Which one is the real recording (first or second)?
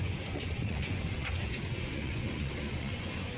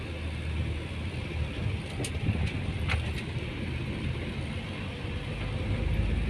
second